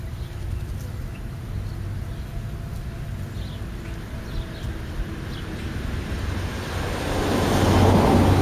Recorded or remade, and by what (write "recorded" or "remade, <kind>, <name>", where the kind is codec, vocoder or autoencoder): recorded